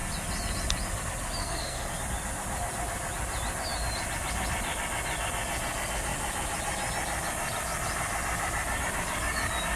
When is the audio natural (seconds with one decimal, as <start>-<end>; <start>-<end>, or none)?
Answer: 0.0-1.4; 2.0-9.8